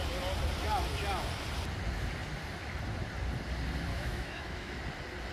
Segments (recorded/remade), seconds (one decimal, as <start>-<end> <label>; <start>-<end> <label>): 0.0-3.9 recorded; 3.9-4.8 remade; 4.8-5.3 recorded